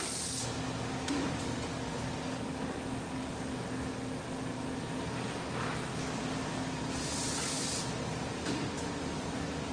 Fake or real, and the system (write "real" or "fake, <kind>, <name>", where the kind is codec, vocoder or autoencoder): real